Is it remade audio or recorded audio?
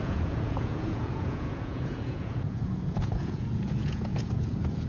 remade